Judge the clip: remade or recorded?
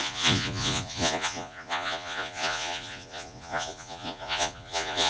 remade